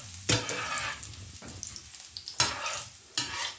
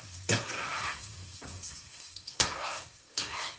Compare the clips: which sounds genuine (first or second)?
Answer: first